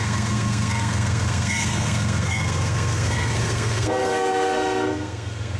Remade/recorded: remade